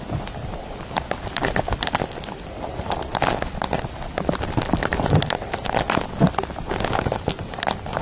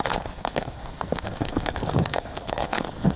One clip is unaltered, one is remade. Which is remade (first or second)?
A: second